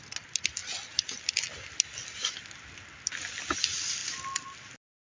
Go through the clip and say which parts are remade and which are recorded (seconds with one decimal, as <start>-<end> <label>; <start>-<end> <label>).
0.0-5.0 recorded